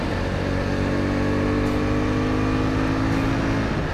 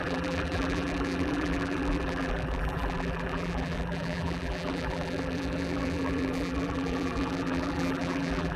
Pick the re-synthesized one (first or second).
second